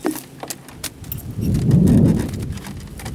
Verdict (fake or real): real